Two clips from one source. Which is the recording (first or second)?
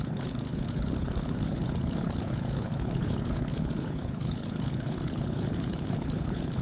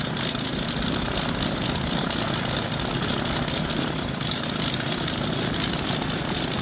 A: second